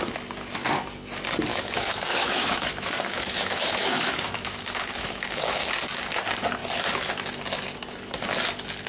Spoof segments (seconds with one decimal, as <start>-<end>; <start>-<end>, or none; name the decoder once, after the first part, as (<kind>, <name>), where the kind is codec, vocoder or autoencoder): 1.5-5.7 (autoencoder, DAC-VAE)

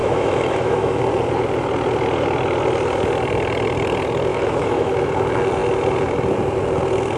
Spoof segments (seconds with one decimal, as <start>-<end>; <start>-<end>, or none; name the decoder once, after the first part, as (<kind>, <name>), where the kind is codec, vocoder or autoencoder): 0.0-1.0 (autoencoder, DAC-VAE); 4.3-5.1

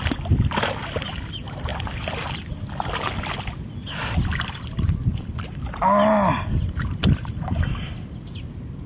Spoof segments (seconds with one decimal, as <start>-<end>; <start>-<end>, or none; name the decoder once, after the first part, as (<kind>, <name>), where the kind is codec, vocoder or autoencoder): none

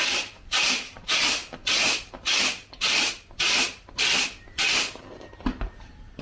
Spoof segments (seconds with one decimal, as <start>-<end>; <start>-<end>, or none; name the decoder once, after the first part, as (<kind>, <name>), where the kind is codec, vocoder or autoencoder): 0.0-1.4 (vocoder, BigVGAN v2); 5.1-6.2

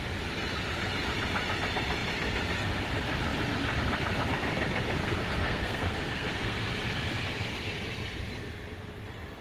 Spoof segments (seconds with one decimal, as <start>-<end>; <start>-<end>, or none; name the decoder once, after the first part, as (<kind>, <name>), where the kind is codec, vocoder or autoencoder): 5.0-6.6 (codec, SNAC)

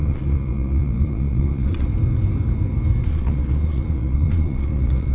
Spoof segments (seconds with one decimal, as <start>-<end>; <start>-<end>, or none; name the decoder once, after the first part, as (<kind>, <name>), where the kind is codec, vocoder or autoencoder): 0.0-1.9 (vocoder, Vocos); 3.1-5.1

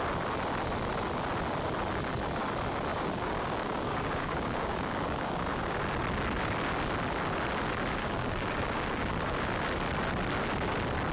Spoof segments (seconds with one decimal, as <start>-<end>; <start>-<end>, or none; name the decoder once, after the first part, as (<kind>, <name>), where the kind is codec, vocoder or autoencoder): 2.9-5.7 (codec, DAC); 8.0-9.1

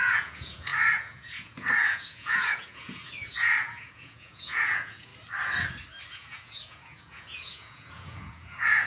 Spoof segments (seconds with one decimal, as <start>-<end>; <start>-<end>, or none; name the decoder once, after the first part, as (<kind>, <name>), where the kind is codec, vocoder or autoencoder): 0.0-5.1 (vocoder, Vocos); 6.1-8.9